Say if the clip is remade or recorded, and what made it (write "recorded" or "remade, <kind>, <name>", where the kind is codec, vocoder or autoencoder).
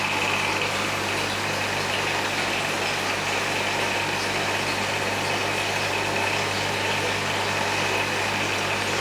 recorded